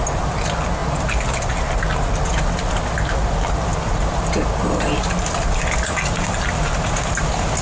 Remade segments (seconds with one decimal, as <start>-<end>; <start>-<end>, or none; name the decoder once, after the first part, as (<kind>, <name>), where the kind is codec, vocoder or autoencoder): none